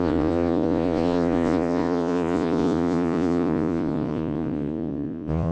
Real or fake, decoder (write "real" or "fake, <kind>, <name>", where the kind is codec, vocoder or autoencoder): fake, vocoder, Vocos